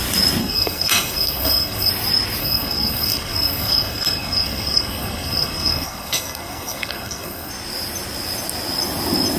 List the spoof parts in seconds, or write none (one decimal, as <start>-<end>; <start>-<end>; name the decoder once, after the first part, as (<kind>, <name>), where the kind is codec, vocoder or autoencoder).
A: 0.4-1.9 (codec, SNAC); 2.4-7.5